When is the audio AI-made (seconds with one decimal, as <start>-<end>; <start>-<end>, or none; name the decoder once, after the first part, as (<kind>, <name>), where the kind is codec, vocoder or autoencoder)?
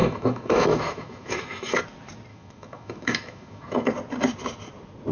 0.0-1.8 (autoencoder, DAC-VAE); 2.3-3.9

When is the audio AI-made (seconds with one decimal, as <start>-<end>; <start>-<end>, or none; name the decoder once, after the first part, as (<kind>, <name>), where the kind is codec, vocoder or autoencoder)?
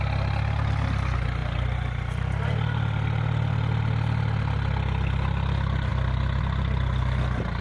none